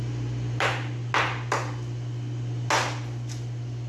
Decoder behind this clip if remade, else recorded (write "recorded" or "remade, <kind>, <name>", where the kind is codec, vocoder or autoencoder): recorded